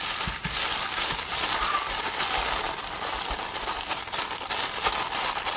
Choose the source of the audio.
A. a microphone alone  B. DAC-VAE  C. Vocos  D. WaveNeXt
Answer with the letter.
A